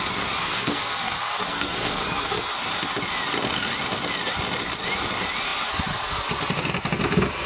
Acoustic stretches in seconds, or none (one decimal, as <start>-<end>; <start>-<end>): 0.0-0.4; 2.5-7.5